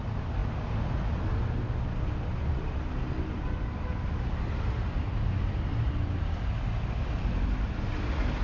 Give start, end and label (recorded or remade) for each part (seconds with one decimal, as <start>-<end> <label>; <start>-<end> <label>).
0.0-8.4 recorded